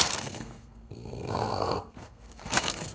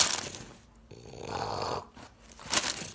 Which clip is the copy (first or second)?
first